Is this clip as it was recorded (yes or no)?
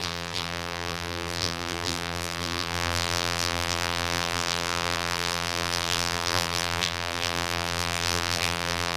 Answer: no